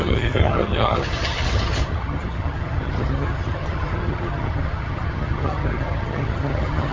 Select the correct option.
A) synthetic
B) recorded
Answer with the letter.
A